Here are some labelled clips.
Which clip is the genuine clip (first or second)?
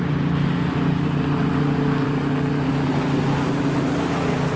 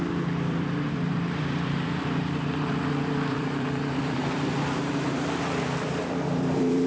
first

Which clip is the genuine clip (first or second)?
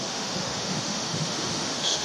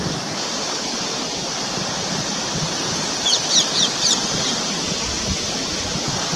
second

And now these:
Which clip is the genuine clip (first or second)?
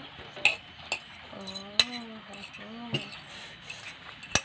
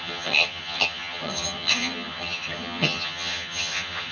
first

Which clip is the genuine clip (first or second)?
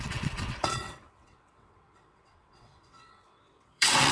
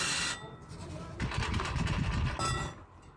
second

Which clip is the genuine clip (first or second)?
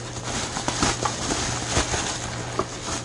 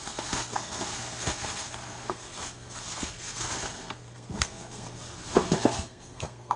first